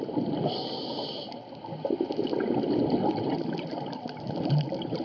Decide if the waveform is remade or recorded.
recorded